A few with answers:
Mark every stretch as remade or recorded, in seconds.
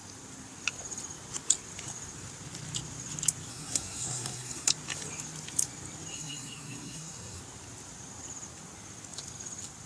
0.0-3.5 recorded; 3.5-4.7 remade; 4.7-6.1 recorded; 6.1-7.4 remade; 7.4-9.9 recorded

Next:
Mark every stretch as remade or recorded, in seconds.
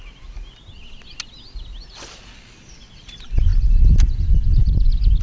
0.0-5.2 recorded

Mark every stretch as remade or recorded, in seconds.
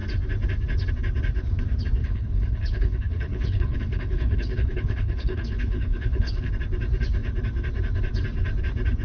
0.0-2.0 recorded; 2.0-6.5 remade; 6.5-9.0 recorded